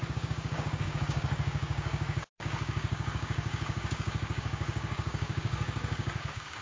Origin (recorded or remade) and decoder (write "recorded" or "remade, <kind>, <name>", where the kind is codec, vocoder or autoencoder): remade, codec, DAC